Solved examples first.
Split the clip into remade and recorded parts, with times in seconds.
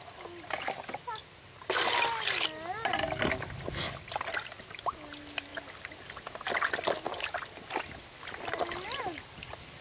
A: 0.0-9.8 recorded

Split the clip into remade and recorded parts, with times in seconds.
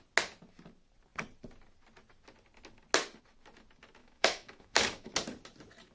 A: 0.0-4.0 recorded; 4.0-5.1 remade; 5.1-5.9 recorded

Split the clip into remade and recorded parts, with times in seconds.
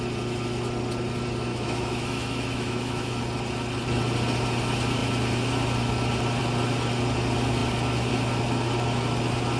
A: 0.0-1.5 recorded; 1.5-3.2 remade; 3.2-9.6 recorded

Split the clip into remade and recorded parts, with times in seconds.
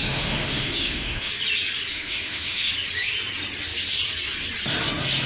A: 0.0-1.3 remade; 1.3-1.9 recorded; 1.9-2.7 remade; 2.7-5.3 recorded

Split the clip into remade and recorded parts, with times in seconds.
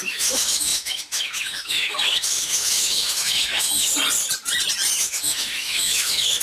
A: 0.0-3.9 remade; 3.9-5.0 recorded; 5.0-6.4 remade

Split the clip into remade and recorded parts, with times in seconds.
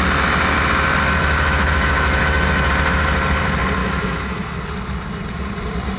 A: 0.0-1.2 recorded; 1.2-2.7 remade; 2.7-3.8 recorded; 3.8-4.6 remade; 4.6-6.0 recorded